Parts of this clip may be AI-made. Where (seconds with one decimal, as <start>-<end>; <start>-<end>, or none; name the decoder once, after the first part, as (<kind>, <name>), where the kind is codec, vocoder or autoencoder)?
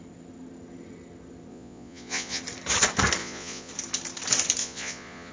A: 1.5-2.4 (vocoder, Vocos); 3.2-3.7; 4.6-5.3